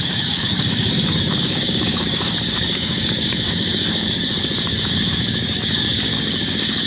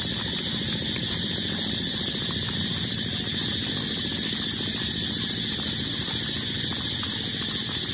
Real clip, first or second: second